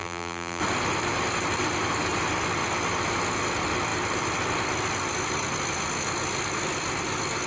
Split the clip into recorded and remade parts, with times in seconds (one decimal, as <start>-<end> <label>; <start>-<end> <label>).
0.0-0.6 remade; 0.6-7.5 recorded

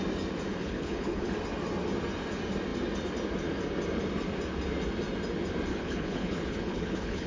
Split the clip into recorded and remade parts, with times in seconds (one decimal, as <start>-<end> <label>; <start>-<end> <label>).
0.0-0.5 recorded; 0.5-1.3 remade; 1.3-5.7 recorded; 5.7-7.3 remade

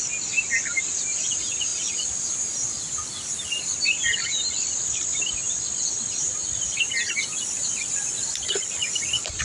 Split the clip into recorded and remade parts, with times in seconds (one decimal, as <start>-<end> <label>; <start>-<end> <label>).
0.0-1.7 recorded; 1.7-4.3 remade; 4.3-8.8 recorded; 8.8-9.4 remade

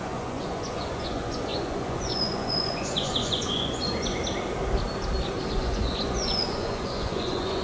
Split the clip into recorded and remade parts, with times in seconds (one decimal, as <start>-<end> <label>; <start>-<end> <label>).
0.0-4.2 remade; 4.2-5.5 recorded; 5.5-7.6 remade

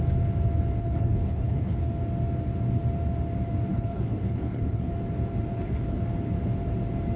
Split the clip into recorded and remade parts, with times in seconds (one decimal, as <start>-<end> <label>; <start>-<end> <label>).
0.0-0.8 recorded; 0.8-1.9 remade; 1.9-3.7 recorded; 3.7-4.9 remade; 4.9-5.5 recorded; 5.5-6.0 remade; 6.0-7.2 recorded